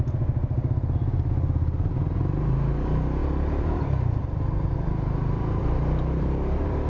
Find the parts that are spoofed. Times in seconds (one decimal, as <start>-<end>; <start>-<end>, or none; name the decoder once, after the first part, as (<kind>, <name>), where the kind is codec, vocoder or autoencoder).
3.2-6.9 (vocoder, BigVGAN v2)